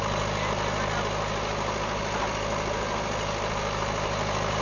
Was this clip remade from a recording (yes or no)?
no